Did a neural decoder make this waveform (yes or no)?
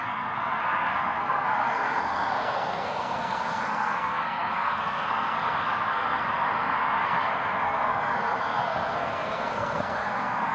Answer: yes